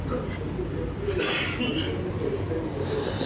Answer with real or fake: real